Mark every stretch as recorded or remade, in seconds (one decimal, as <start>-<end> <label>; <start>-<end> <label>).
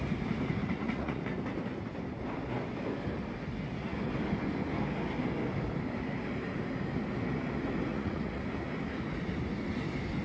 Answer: 0.0-0.6 recorded; 0.6-1.2 remade; 1.2-7.9 recorded; 7.9-8.4 remade; 8.4-10.2 recorded